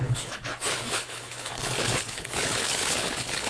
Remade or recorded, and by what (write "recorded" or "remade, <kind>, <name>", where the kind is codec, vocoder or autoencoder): remade, codec, HILCodec